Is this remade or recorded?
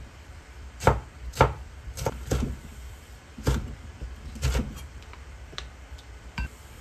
remade